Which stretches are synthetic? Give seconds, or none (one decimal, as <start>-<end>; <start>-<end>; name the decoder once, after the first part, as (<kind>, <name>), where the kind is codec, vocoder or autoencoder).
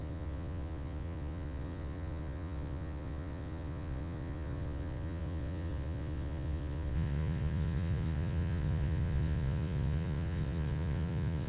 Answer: 0.0-11.5 (vocoder, Vocos)